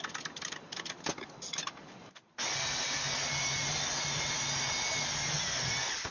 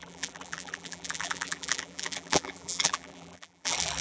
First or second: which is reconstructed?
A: second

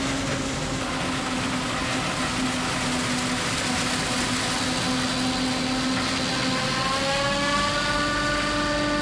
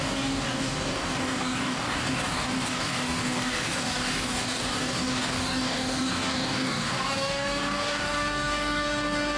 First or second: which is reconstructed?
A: second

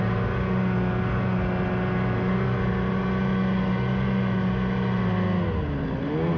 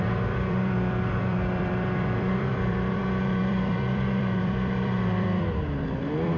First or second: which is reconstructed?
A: second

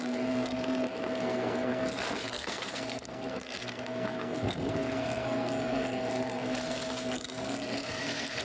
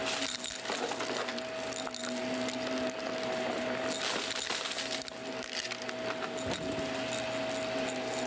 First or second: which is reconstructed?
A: first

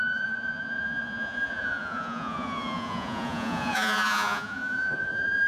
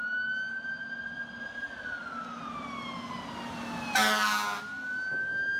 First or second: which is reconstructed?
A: first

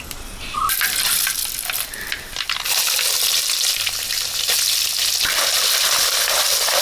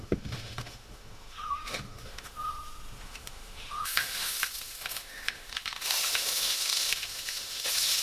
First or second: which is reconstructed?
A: second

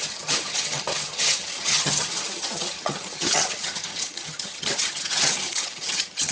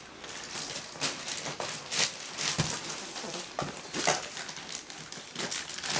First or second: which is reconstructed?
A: first